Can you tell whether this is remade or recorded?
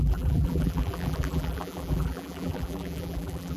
remade